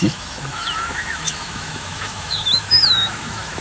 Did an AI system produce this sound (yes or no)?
yes